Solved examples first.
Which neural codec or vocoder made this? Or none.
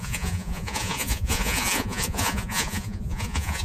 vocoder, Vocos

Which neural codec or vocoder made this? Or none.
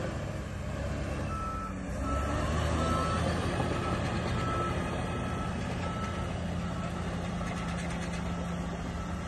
none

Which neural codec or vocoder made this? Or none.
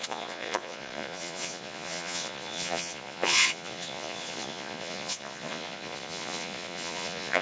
vocoder, Vocos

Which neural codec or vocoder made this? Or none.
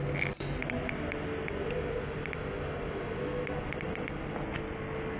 none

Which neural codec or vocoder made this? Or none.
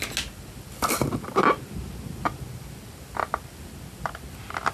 none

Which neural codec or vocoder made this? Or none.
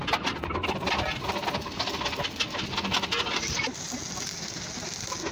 none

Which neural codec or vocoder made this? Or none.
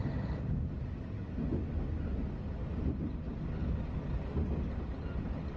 none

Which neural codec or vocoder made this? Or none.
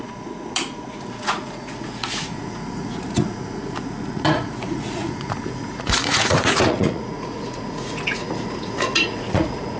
vocoder, Vocos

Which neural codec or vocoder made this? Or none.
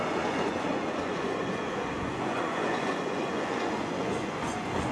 vocoder, Vocos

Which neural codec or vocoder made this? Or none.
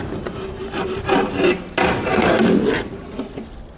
none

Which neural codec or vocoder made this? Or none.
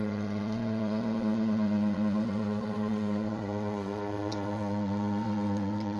vocoder, Vocos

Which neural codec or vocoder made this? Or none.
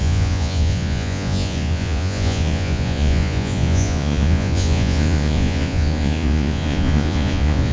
vocoder, Vocos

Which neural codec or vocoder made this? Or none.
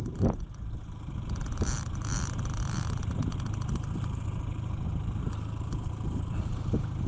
none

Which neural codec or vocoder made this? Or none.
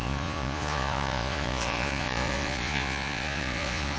vocoder, Vocos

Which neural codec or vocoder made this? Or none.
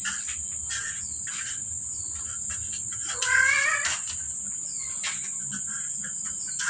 none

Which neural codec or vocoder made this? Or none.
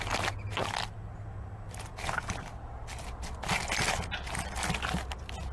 none